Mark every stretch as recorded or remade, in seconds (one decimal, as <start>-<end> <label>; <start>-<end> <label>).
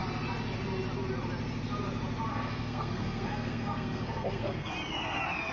0.0-2.3 recorded; 2.3-4.7 remade; 4.7-5.5 recorded